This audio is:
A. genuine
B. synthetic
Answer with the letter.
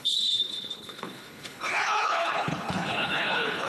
B